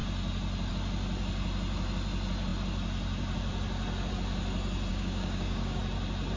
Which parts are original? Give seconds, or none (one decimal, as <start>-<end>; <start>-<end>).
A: 0.0-4.9; 5.8-6.4